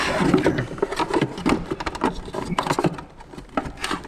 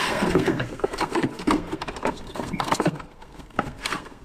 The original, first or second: first